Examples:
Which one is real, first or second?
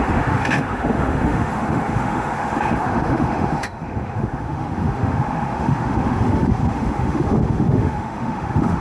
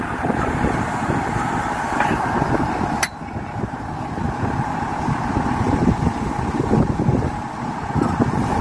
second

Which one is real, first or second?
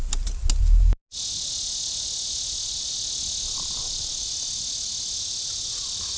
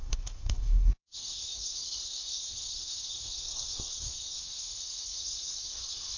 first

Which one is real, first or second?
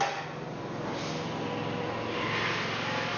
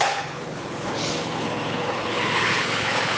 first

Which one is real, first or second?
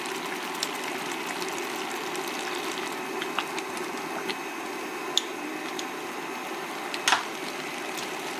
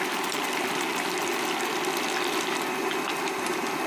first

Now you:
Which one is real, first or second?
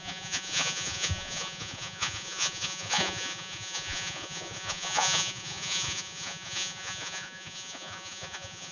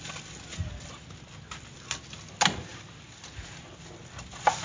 second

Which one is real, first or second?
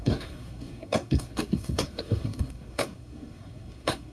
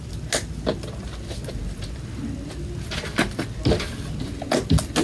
second